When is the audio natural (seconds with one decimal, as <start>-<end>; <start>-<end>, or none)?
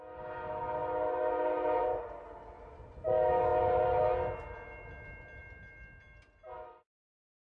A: 0.0-7.6